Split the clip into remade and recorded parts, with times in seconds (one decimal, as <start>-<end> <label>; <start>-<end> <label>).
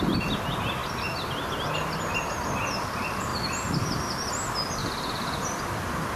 0.0-4.8 recorded; 4.8-5.6 remade; 5.6-6.2 recorded